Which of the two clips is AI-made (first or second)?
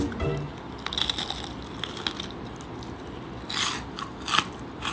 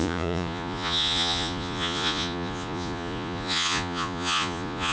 second